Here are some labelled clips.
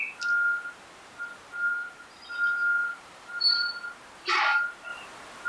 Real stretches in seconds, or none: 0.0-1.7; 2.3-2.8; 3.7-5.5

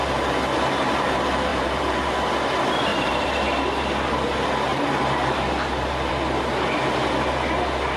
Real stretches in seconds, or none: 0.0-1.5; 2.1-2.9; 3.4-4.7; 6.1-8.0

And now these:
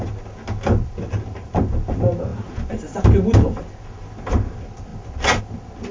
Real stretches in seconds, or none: 0.0-5.9

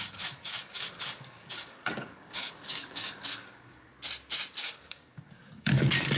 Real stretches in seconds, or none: 3.9-4.6